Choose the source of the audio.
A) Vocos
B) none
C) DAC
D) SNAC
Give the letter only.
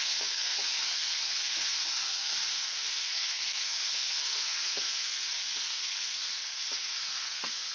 D